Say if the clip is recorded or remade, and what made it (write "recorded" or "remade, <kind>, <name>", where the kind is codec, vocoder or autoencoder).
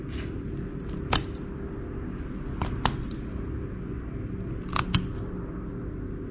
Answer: recorded